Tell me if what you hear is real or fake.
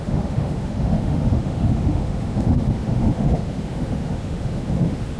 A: fake